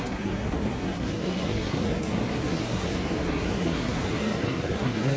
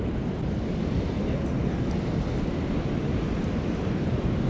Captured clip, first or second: second